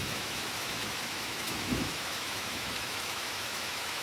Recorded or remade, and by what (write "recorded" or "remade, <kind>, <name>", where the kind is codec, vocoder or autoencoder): remade, autoencoder, DAC-VAE